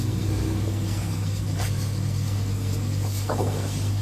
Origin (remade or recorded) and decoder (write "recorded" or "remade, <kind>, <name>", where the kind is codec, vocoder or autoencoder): remade, codec, SNAC